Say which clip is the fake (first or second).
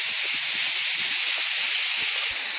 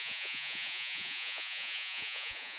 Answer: second